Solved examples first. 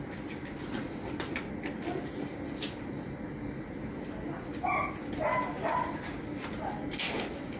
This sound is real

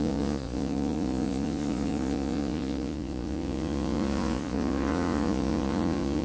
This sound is fake